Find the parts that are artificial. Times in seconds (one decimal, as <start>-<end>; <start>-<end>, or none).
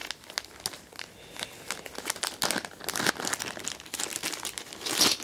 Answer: none